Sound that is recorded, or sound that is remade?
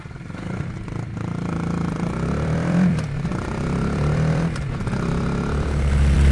remade